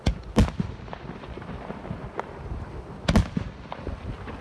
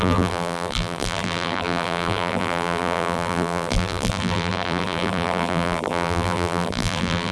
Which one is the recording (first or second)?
first